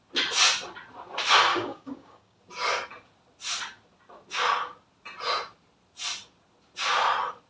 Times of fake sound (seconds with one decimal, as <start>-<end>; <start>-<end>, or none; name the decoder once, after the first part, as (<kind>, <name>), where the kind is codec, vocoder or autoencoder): 1.5-2.4 (codec, DAC)